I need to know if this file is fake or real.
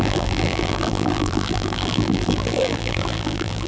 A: fake